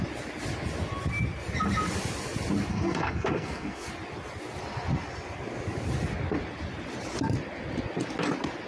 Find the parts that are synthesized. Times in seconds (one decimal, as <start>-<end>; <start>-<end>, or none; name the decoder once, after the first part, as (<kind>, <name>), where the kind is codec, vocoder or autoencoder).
2.7-3.9 (codec, SNAC)